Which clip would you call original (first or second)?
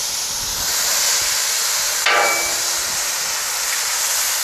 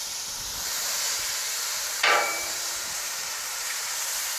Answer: first